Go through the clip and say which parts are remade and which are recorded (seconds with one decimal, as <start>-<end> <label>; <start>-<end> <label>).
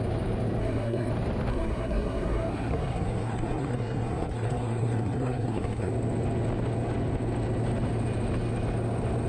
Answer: 0.0-0.6 recorded; 0.6-1.1 remade; 1.1-1.5 recorded; 1.5-5.9 remade; 5.9-9.3 recorded